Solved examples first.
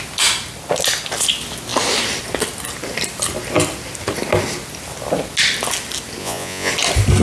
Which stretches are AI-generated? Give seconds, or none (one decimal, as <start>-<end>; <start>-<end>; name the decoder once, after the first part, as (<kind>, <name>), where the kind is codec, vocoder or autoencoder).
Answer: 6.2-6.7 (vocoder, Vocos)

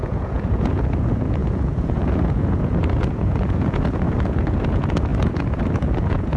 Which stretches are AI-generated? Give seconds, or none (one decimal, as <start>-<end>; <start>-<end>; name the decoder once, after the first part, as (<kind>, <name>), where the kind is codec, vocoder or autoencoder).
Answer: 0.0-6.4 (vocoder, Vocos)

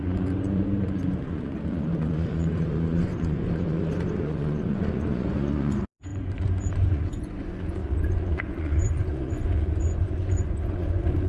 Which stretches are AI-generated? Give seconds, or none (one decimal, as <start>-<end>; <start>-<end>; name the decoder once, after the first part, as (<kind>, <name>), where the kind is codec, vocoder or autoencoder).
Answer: 0.0-11.3 (vocoder, Vocos)

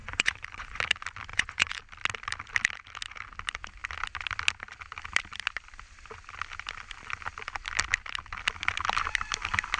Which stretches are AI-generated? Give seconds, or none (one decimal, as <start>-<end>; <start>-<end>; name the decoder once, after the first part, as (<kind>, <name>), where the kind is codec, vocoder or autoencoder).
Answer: 0.0-0.8 (vocoder, Vocos); 1.3-1.8

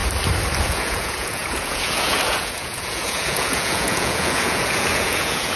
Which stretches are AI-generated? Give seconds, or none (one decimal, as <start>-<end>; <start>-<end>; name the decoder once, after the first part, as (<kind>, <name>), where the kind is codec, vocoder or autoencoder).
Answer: 0.6-5.6 (vocoder, Vocos)